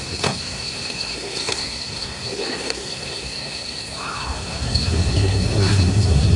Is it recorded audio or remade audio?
remade